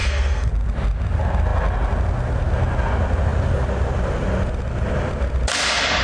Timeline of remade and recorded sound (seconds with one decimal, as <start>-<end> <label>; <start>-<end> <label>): 0.0-0.5 remade; 0.5-6.0 recorded

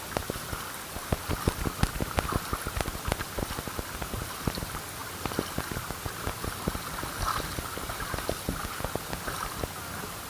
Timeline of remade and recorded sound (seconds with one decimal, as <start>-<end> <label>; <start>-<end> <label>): 0.0-10.3 recorded

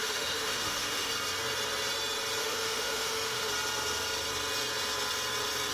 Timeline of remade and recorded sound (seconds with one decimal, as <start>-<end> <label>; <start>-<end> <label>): 0.0-1.1 remade; 1.1-2.4 recorded; 2.4-3.5 remade; 3.5-5.7 recorded